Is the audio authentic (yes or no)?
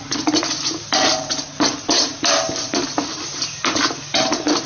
yes